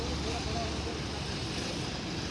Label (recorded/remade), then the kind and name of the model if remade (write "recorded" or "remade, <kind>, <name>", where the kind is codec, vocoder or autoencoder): recorded